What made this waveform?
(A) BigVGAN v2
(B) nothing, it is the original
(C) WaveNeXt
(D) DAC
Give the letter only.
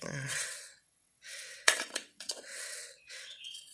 C